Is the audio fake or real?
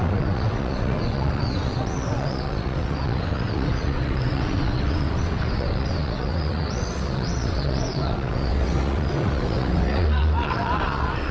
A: fake